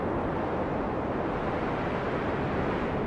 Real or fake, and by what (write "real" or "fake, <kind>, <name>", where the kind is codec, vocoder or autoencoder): real